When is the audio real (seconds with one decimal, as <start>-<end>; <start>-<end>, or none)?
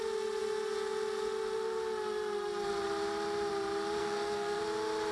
0.0-4.0; 4.6-5.1